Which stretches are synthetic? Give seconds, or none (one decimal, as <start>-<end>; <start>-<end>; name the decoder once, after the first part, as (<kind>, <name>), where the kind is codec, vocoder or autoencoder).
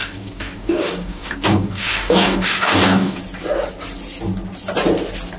0.0-3.2 (codec, DAC)